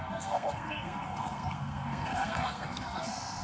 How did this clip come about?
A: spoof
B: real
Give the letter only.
A